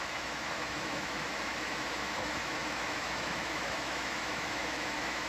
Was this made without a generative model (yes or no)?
no